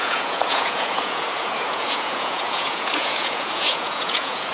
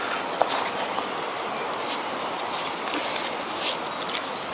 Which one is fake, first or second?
first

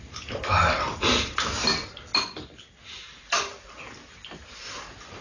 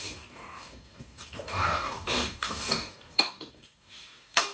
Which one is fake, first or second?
second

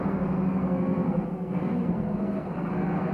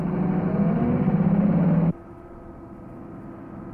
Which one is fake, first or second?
first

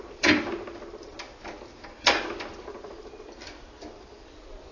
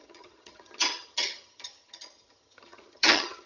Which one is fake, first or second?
second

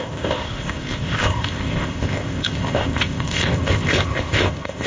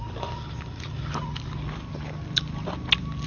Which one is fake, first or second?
first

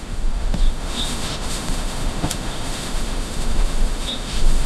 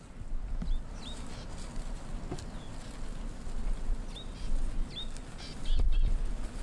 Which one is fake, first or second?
first